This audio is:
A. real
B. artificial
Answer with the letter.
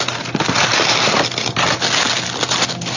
A